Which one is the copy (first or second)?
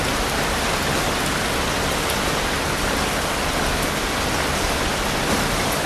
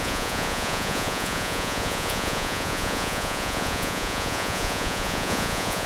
second